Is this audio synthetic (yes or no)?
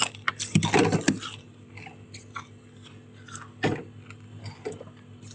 no